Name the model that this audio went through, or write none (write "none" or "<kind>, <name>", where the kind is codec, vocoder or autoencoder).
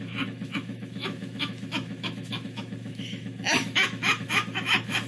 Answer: autoencoder, DAC-VAE